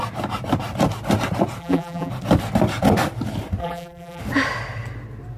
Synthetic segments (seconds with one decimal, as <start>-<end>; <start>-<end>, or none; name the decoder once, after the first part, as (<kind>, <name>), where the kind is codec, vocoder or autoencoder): 1.6-2.1 (vocoder, BigVGAN v2); 3.6-4.2